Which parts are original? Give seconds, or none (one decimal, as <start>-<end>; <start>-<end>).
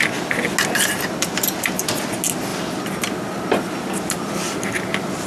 0.0-5.3